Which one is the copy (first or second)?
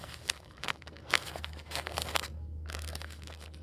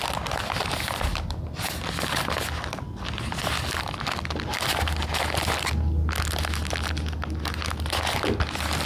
first